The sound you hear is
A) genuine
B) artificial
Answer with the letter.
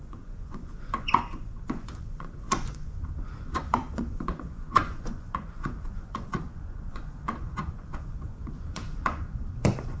B